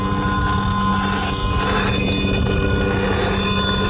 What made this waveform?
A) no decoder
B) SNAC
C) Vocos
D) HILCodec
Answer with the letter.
A